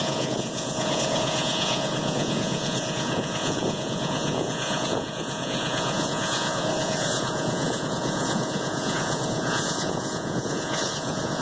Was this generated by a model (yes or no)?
yes